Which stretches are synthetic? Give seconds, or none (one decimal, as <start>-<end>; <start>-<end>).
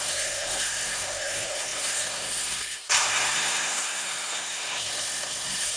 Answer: 0.0-5.8